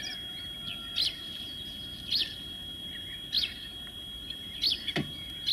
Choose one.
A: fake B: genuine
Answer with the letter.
B